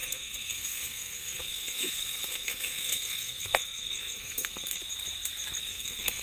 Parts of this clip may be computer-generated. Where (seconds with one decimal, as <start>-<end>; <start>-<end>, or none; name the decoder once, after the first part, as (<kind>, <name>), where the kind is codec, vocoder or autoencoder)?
0.0-4.8 (codec, SNAC); 5.6-6.2